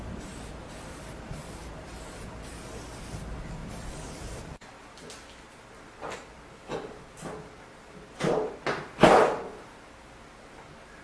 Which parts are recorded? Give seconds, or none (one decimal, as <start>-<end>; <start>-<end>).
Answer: 0.0-11.0